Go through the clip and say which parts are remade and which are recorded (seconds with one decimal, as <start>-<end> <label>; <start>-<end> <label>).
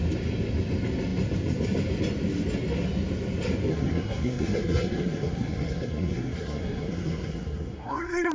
0.0-3.7 recorded; 3.7-8.3 remade